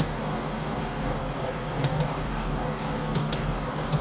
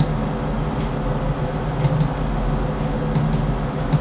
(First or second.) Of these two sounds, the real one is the second